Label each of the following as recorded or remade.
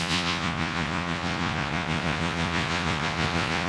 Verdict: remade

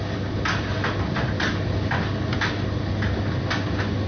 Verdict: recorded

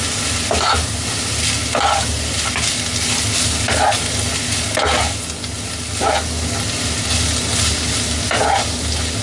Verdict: recorded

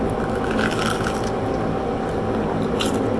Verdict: recorded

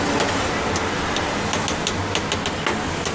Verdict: recorded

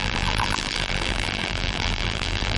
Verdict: remade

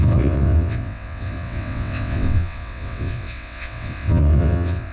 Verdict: remade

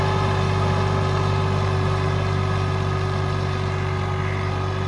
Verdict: recorded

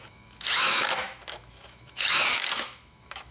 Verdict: remade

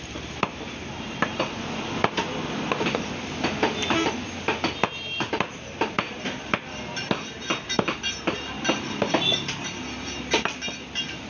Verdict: recorded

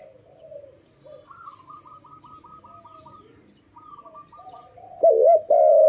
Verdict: recorded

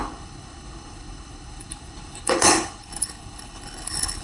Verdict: remade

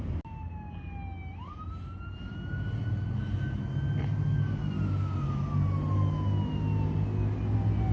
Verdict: recorded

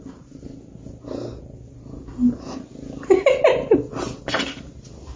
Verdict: recorded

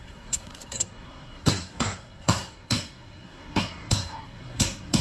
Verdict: remade